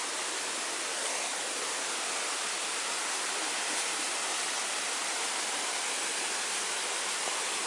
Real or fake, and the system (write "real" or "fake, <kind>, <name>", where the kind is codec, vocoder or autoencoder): real